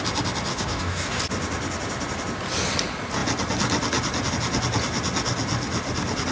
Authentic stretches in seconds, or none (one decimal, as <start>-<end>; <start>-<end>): 0.0-0.5; 1.2-6.3